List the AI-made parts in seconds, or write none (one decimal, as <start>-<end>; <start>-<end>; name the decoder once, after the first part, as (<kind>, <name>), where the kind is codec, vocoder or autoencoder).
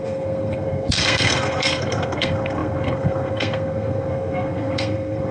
0.0-5.3 (codec, SNAC)